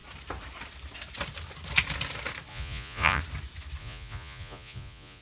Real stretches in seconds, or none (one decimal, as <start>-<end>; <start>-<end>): 0.0-2.5; 3.2-3.8